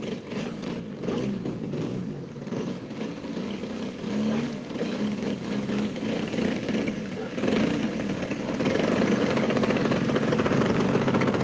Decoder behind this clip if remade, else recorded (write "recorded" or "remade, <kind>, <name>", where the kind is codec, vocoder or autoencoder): remade, codec, DAC